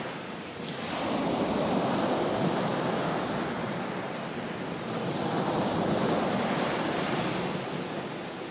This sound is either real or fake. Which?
real